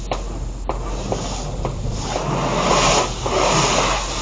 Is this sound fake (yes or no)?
no